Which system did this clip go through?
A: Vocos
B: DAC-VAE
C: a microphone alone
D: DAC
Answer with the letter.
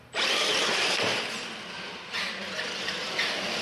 C